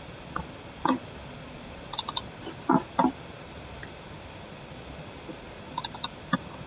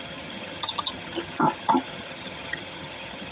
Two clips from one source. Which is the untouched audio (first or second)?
first